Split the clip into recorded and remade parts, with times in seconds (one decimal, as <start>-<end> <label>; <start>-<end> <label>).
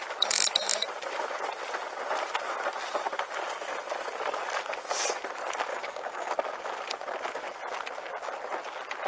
0.0-5.7 recorded; 5.7-6.3 remade; 6.3-9.1 recorded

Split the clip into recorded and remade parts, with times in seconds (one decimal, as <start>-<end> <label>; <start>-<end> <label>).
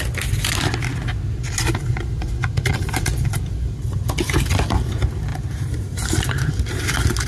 0.0-5.3 recorded; 5.3-6.5 remade; 6.5-7.3 recorded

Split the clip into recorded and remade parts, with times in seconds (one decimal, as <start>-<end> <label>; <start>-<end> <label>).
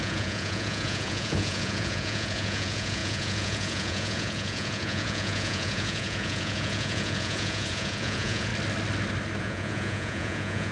0.0-8.5 remade; 8.5-9.4 recorded; 9.4-10.7 remade